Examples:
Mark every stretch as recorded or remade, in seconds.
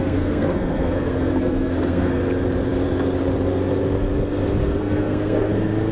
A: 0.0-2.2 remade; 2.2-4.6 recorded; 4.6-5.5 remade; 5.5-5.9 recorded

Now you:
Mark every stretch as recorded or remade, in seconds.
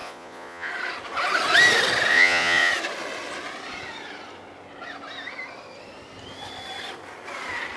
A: 0.0-0.7 remade; 0.7-2.1 recorded; 2.1-2.7 remade; 2.7-7.8 recorded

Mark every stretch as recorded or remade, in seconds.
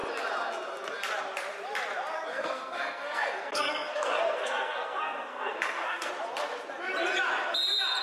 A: 0.0-2.3 recorded; 2.3-6.1 remade; 6.1-8.0 recorded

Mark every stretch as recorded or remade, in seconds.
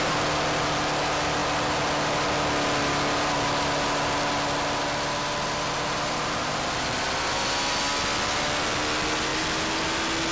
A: 0.0-10.3 recorded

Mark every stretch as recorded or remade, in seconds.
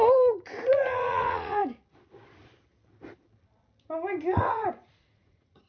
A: 0.0-1.6 remade; 1.6-4.2 recorded; 4.2-5.7 remade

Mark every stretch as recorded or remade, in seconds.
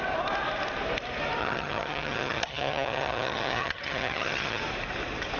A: 0.0-1.4 recorded; 1.4-4.6 remade; 4.6-5.4 recorded